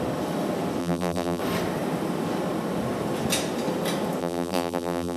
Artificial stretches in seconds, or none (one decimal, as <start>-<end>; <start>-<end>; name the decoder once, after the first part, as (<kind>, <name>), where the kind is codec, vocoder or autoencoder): 0.8-1.4 (vocoder, BigVGAN v2); 4.2-5.2